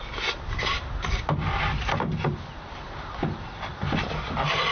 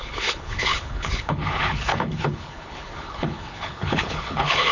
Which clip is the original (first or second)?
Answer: first